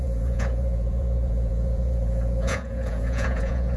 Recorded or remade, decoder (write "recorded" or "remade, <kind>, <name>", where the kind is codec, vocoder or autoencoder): remade, vocoder, Vocos